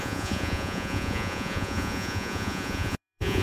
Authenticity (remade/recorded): remade